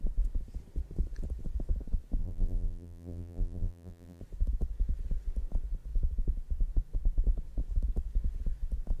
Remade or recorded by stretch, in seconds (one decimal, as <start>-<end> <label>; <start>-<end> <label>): 0.0-2.2 recorded; 2.2-4.2 remade; 4.2-9.0 recorded

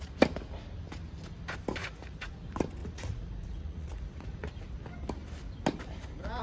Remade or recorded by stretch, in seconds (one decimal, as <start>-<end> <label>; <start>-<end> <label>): 0.0-1.8 recorded; 1.8-2.3 remade; 2.3-2.8 recorded; 2.8-4.5 remade; 4.5-6.4 recorded

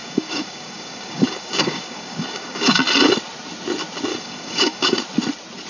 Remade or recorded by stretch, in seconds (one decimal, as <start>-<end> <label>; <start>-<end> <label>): 0.0-2.8 remade; 2.8-4.1 recorded; 4.1-5.0 remade; 5.0-5.7 recorded

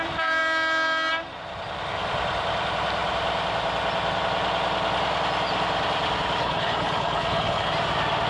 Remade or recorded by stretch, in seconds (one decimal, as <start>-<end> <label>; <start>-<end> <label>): 0.0-6.4 recorded; 6.4-7.7 remade; 7.7-8.3 recorded

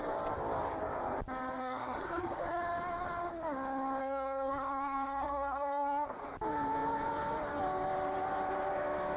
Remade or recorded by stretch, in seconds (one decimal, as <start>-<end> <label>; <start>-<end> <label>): 0.0-1.6 recorded; 1.6-2.6 remade; 2.6-4.0 recorded; 4.0-6.2 remade; 6.2-9.2 recorded

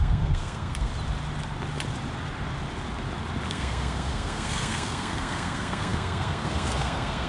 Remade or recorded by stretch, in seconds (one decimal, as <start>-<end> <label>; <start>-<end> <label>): 0.0-0.9 remade; 0.9-3.5 recorded; 3.5-7.3 remade

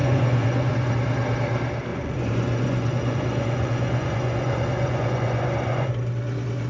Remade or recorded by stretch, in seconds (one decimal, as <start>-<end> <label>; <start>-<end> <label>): 0.0-0.9 remade; 0.9-1.9 recorded; 1.9-5.9 remade; 5.9-6.7 recorded

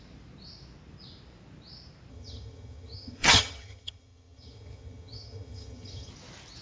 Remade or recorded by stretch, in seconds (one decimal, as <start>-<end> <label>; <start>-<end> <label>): 0.0-2.1 recorded; 2.1-6.1 remade; 6.1-6.6 recorded